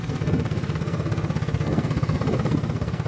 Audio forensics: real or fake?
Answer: fake